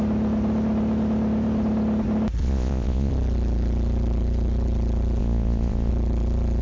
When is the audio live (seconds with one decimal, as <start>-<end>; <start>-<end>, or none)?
0.0-2.4; 3.1-5.2; 5.9-6.6